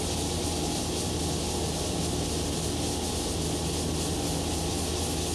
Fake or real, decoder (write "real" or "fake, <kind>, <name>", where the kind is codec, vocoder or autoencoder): real